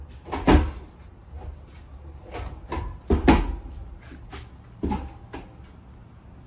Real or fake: real